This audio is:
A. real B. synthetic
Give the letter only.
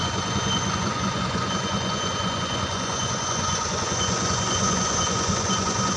B